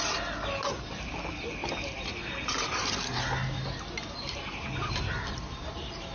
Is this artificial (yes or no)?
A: no